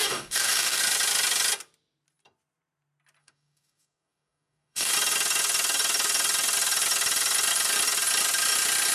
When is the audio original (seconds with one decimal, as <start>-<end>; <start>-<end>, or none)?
0.8-3.2; 4.9-8.9